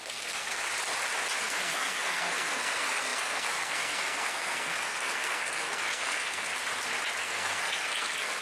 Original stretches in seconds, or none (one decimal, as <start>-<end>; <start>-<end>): 0.7-1.4; 6.5-7.2

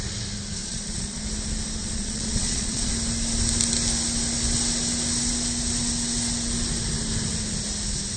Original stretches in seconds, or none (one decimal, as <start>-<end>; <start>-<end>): 0.0-0.6; 1.2-1.8; 2.9-8.2

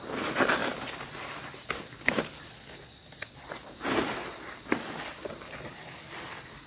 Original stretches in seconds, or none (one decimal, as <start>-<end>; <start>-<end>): 0.0-6.7

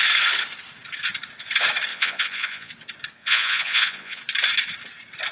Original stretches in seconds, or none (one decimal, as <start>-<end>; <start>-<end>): 0.0-1.9; 2.7-3.2; 4.2-5.3

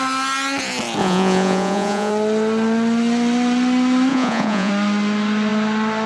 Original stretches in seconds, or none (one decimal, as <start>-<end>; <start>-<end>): 0.0-1.0; 2.1-4.1; 4.7-6.1

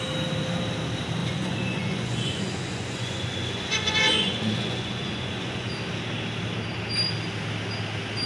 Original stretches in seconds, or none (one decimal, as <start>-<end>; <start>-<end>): 0.0-1.2; 5.7-8.3

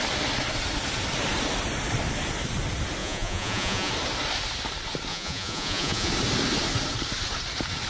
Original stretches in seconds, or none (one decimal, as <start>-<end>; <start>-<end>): 0.0-3.0; 3.9-5.1; 6.1-7.9

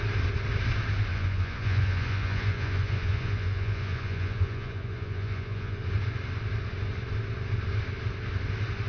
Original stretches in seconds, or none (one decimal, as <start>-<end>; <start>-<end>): 0.0-1.1; 5.8-8.9